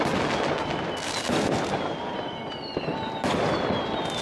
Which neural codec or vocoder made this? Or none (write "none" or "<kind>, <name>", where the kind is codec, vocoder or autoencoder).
none